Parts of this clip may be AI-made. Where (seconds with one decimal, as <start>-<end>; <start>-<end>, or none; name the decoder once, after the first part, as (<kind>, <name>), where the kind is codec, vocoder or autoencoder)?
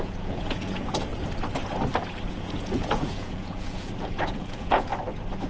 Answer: 0.0-1.1 (vocoder, Vocos); 2.3-4.9